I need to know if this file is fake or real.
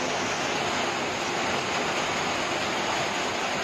real